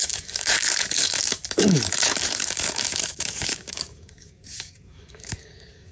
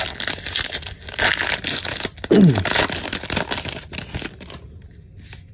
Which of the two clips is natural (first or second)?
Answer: second